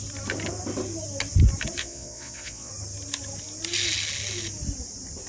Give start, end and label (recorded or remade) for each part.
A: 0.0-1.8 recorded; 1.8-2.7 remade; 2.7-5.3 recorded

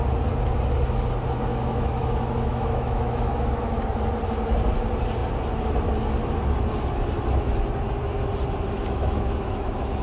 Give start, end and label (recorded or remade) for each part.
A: 0.0-1.5 recorded; 1.5-3.8 remade; 3.8-8.8 recorded; 8.8-10.0 remade

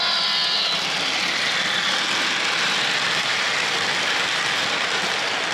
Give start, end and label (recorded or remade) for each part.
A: 0.0-5.5 recorded

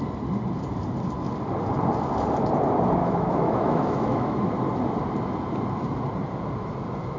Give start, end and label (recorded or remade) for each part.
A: 0.0-3.0 recorded; 3.0-4.5 remade; 4.5-7.2 recorded

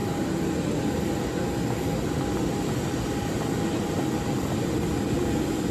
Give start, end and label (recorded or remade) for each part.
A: 0.0-5.7 recorded

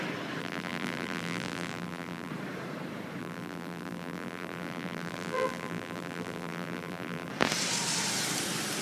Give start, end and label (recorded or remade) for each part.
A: 0.0-0.4 recorded; 0.4-2.3 remade; 2.3-3.2 recorded; 3.2-7.3 remade; 7.3-8.8 recorded

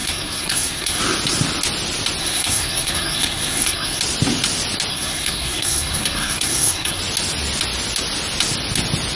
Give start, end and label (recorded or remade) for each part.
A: 0.0-1.0 remade; 1.0-2.2 recorded; 2.2-4.0 remade; 4.0-4.9 recorded; 4.9-7.0 remade; 7.0-9.2 recorded